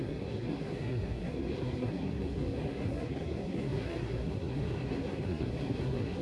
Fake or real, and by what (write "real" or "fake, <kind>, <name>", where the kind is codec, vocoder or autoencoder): fake, codec, SNAC